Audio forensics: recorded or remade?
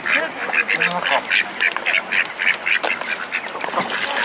recorded